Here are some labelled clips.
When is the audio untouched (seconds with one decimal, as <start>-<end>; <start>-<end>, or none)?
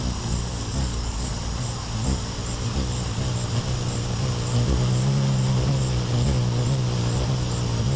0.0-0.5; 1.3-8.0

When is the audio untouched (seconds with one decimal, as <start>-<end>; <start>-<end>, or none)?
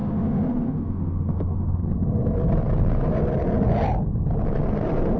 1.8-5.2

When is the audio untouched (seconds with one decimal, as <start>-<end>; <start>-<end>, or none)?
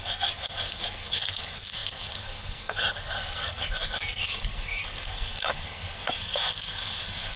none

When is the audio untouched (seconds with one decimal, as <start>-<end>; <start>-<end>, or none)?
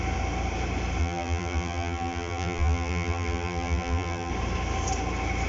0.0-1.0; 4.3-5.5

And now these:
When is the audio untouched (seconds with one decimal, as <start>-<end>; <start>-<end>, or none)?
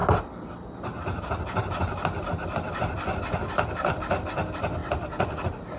0.0-5.8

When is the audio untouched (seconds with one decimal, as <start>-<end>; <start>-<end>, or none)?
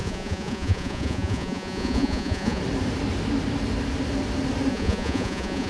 2.6-4.7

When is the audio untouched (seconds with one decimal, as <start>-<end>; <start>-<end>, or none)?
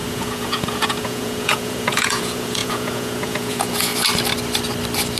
3.9-5.2